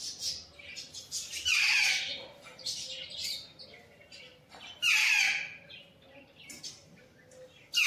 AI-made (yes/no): no